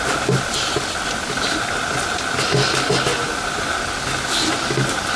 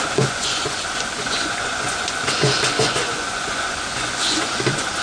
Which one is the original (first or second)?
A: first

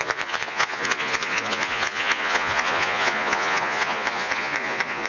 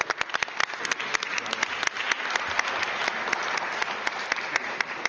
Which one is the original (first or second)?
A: second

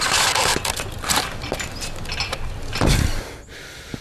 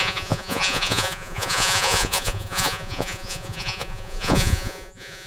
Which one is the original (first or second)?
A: first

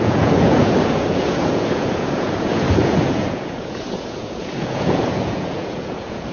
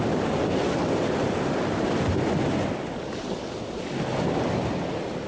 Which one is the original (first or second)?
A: second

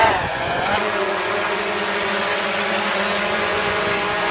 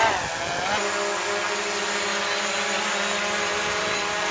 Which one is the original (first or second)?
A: second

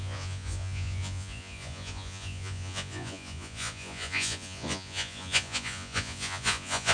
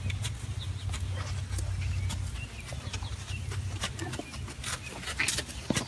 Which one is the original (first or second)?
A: second